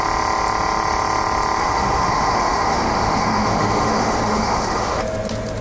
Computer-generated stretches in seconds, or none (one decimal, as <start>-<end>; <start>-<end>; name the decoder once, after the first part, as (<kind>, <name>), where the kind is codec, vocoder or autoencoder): 1.6-5.0 (autoencoder, DAC-VAE)